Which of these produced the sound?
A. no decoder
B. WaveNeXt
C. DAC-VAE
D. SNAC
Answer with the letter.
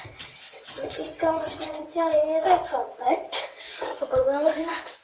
B